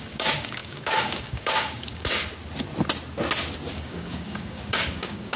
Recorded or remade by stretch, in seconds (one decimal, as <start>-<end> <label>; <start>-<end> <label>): 0.0-2.2 remade; 2.2-3.7 recorded; 3.7-5.4 remade

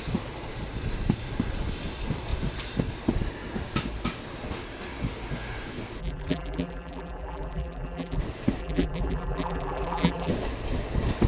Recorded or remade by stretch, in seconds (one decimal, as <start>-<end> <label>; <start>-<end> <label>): 0.0-6.0 recorded; 6.0-8.2 remade; 8.2-8.6 recorded; 8.6-10.3 remade; 10.3-11.3 recorded

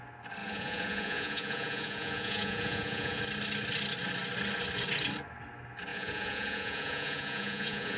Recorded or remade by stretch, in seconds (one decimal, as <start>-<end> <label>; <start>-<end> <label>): 0.0-0.4 recorded; 0.4-3.2 remade; 3.2-5.9 recorded; 5.9-8.0 remade

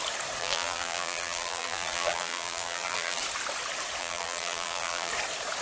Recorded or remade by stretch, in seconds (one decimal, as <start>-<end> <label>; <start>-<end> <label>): 0.0-0.4 recorded; 0.4-3.2 remade; 3.2-4.0 recorded; 4.0-5.1 remade; 5.1-5.6 recorded

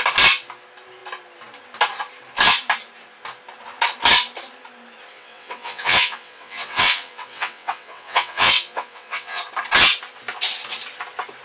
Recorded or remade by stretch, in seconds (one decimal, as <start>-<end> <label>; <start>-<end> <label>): 0.0-5.1 recorded; 5.1-9.4 remade; 9.4-11.4 recorded

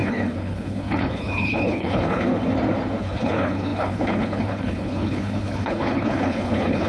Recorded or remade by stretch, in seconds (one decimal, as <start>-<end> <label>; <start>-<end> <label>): 0.0-2.3 remade; 2.3-3.0 recorded; 3.0-6.9 remade

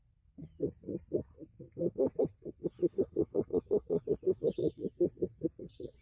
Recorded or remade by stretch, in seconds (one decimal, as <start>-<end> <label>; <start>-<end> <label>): 0.0-2.1 recorded; 2.1-6.0 remade